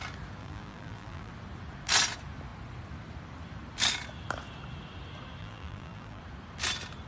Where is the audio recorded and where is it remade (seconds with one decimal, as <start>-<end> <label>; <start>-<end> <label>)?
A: 0.0-0.4 recorded; 0.4-1.3 remade; 1.3-5.4 recorded; 5.4-6.2 remade; 6.2-7.1 recorded